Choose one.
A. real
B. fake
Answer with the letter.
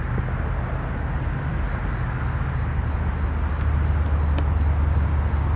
A